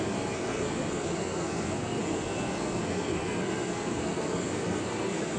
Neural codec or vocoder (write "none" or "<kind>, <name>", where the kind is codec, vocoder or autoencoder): codec, SNAC